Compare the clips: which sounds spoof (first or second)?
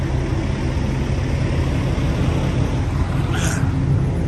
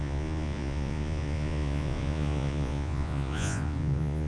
second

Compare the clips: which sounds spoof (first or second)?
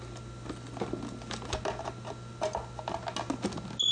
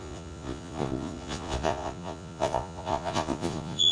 second